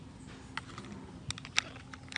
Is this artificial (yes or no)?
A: no